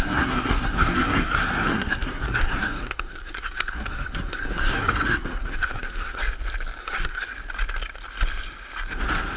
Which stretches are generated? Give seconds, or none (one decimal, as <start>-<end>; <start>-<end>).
0.0-6.2; 6.8-7.3